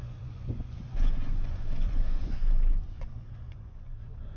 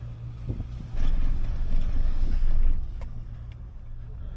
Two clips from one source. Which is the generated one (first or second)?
first